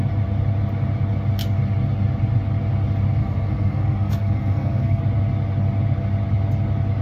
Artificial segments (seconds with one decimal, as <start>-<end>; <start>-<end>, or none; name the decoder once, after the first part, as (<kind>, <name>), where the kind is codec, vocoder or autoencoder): 3.2-5.0 (codec, SNAC)